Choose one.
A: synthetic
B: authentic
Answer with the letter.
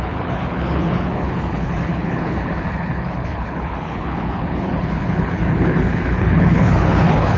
A